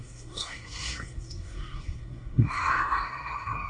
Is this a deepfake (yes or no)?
yes